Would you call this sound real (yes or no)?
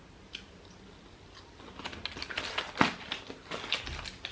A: yes